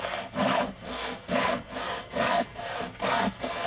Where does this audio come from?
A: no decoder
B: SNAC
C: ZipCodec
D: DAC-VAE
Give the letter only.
B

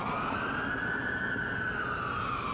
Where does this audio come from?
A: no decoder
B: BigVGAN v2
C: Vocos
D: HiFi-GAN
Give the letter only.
A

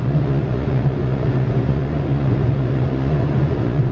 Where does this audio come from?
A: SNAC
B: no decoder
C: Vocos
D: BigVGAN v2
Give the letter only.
C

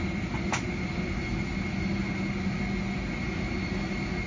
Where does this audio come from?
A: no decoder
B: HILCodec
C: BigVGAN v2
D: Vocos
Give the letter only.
A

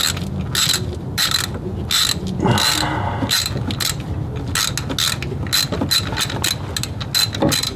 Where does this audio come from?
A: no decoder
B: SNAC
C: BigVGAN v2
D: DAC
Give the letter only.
A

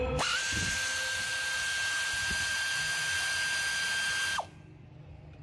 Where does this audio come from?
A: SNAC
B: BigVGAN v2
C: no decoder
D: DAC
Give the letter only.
C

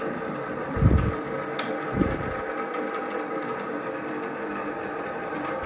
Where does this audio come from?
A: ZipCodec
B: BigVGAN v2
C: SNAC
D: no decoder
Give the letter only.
B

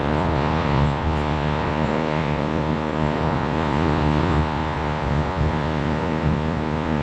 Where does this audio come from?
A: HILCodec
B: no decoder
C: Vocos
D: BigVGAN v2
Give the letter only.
C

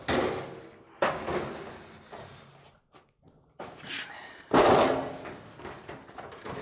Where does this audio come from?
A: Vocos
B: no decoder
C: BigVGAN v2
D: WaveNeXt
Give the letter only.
B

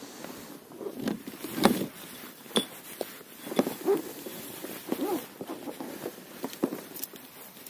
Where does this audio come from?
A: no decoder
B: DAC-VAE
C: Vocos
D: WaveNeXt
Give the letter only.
A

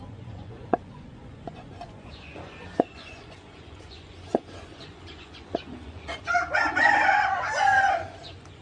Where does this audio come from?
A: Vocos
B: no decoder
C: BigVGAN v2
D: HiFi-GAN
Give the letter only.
A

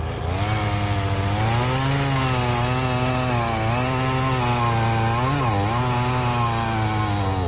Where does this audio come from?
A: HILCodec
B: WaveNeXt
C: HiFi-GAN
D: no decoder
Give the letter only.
D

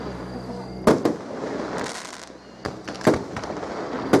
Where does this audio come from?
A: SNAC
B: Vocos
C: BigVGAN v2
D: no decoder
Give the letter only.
D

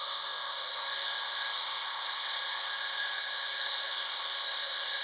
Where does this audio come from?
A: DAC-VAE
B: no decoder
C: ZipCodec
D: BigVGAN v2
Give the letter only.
C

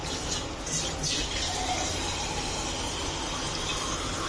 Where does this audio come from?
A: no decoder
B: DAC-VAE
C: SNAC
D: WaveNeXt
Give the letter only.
A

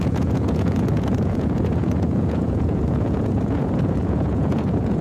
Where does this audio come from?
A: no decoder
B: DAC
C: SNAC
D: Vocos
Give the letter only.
D